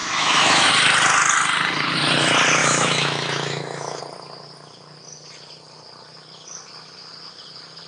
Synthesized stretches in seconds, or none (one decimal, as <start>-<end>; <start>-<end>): 0.0-0.7; 2.6-4.0